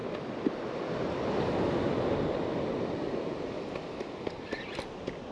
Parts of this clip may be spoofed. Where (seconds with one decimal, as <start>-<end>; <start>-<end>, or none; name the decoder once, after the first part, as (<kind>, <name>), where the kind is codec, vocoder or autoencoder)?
none